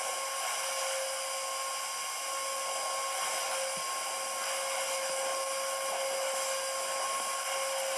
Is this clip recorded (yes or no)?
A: yes